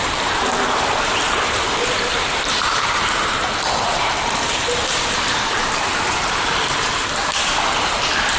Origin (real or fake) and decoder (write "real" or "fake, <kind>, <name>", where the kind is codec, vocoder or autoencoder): fake, vocoder, BigVGAN v2